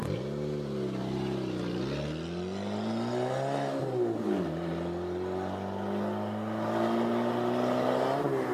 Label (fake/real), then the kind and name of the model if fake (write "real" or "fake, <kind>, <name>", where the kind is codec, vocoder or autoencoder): real